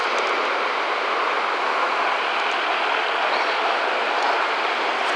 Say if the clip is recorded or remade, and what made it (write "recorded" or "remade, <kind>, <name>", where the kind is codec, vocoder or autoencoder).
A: recorded